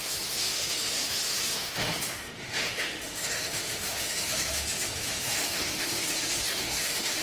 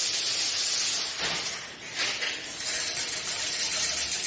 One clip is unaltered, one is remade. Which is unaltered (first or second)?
second